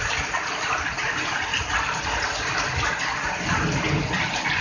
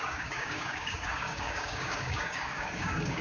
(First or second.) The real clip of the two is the first